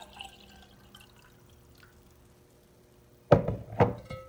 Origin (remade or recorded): recorded